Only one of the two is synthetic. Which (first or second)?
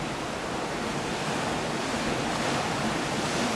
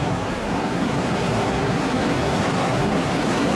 second